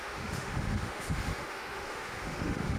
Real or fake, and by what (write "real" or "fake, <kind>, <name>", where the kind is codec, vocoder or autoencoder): fake, autoencoder, DAC-VAE